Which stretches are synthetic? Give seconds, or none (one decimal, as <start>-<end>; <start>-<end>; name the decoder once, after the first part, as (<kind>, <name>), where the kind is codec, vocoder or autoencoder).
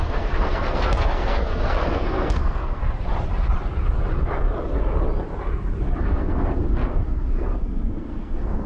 0.0-2.8 (codec, SNAC); 6.0-8.7